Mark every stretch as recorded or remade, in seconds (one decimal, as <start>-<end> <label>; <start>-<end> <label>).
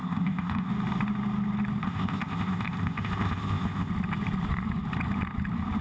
0.0-0.7 remade; 0.7-1.8 recorded; 1.8-3.9 remade; 3.9-5.8 recorded